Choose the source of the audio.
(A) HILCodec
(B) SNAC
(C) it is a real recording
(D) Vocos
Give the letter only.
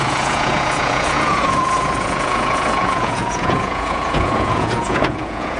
D